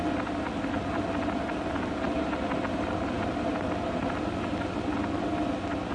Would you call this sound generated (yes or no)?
no